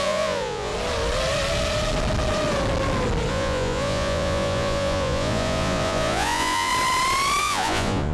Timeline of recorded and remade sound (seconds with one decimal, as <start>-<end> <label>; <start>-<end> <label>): 0.0-0.7 remade; 0.7-3.3 recorded; 3.3-6.7 remade; 6.7-7.4 recorded; 7.4-8.1 remade

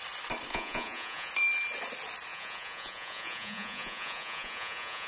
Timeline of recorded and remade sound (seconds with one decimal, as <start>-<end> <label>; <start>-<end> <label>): 0.0-0.5 recorded; 0.5-1.3 remade; 1.3-2.3 recorded; 2.3-5.1 remade

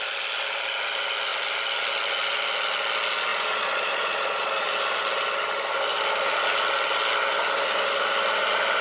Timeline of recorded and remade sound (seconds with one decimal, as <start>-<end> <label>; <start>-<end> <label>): 0.0-3.3 recorded; 3.3-4.7 remade; 4.7-8.8 recorded

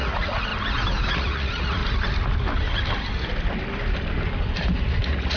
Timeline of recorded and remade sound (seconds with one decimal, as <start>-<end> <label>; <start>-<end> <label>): 0.0-0.5 remade; 0.5-1.1 recorded; 1.1-1.8 remade; 1.8-5.0 recorded; 5.0-5.4 remade

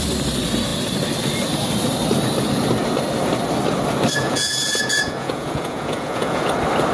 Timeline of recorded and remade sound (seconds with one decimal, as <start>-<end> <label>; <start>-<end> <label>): 0.0-4.2 recorded; 4.2-6.5 remade; 6.5-6.9 recorded

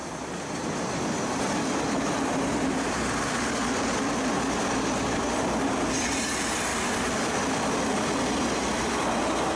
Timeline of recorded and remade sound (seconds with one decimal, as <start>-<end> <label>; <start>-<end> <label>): 0.0-9.6 recorded

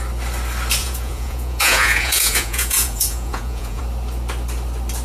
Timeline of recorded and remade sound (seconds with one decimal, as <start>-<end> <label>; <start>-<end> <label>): 0.0-0.8 recorded; 0.8-3.8 remade; 3.8-5.0 recorded